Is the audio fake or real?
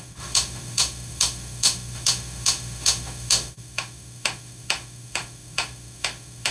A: fake